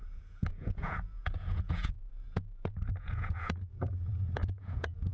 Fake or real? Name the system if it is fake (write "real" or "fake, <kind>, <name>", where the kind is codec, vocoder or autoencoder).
fake, vocoder, Vocos